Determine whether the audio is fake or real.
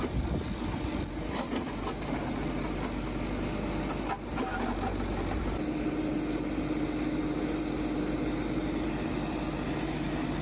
real